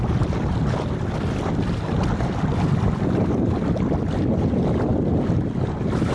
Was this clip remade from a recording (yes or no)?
no